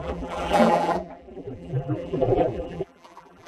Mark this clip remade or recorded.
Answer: remade